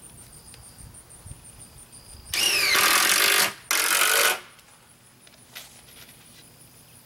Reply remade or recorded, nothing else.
recorded